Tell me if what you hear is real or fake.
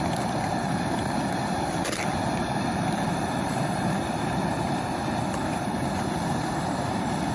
fake